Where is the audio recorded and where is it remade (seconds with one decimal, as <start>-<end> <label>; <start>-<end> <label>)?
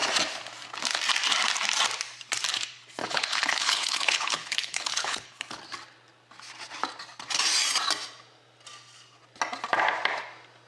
0.0-3.0 recorded; 3.0-5.6 remade; 5.6-10.7 recorded